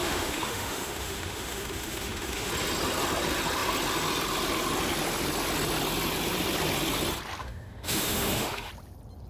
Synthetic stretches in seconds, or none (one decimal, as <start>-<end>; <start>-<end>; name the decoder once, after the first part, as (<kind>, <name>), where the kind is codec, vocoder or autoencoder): 0.0-2.5 (autoencoder, DAC-VAE); 7.4-8.7